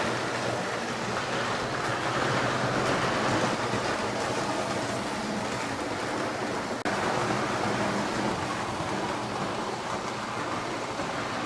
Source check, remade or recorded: recorded